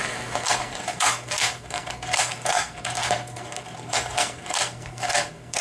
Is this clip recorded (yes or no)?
no